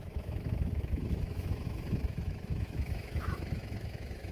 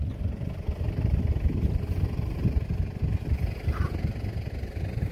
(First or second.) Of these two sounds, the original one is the second